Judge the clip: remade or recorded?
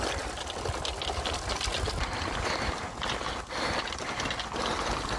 recorded